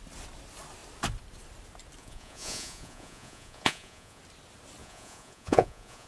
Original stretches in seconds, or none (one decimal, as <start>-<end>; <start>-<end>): 0.0-2.0; 4.2-4.8